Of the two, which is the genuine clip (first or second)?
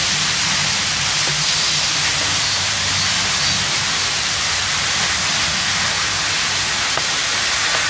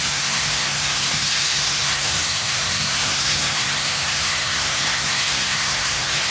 first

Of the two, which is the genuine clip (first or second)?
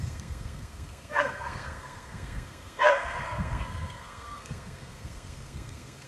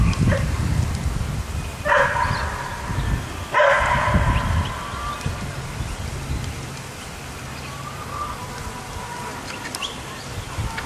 second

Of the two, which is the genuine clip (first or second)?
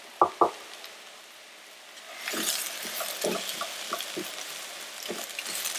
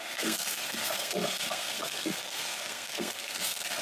first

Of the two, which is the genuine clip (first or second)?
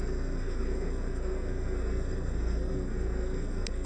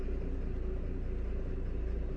second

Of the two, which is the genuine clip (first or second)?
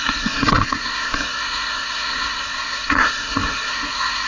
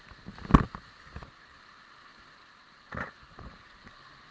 second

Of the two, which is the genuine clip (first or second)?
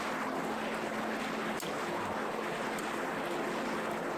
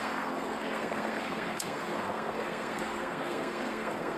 first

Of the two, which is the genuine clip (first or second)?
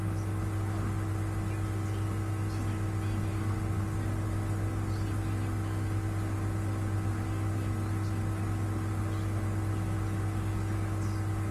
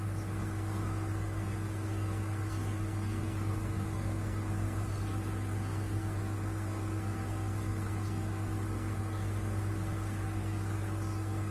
first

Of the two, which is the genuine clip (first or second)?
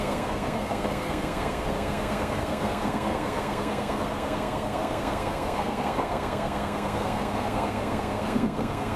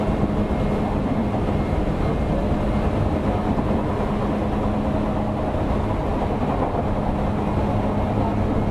second